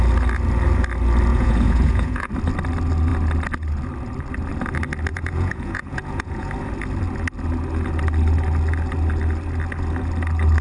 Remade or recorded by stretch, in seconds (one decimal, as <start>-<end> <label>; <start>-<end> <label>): 0.0-1.3 recorded; 1.3-2.3 remade; 2.3-5.1 recorded; 5.1-6.5 remade; 6.5-10.6 recorded